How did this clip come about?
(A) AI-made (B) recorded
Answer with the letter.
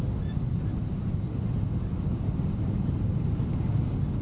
B